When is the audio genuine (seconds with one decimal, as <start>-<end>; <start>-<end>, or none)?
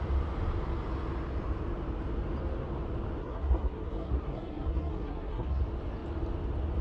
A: 0.0-3.2; 5.6-6.8